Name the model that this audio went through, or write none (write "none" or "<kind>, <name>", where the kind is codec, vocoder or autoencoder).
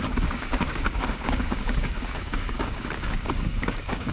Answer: codec, DAC